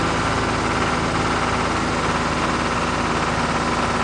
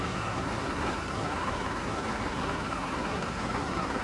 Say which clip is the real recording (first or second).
first